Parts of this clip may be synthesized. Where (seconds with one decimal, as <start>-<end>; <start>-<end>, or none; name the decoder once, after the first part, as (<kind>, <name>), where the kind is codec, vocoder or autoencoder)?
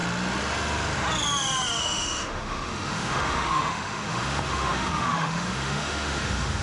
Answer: 1.8-6.6 (autoencoder, DAC-VAE)